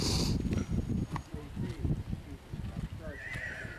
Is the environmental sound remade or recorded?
recorded